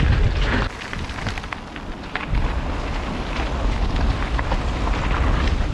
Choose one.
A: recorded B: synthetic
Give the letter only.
A